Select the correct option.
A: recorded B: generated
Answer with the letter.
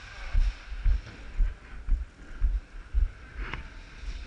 A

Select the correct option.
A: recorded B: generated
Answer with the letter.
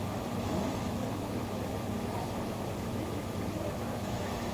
B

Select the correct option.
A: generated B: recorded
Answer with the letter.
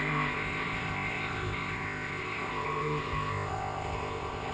A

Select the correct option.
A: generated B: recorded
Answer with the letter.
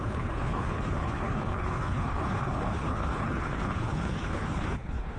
A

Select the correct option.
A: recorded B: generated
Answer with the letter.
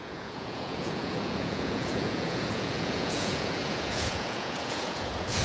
B